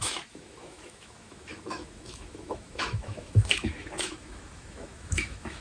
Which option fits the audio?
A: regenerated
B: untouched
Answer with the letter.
A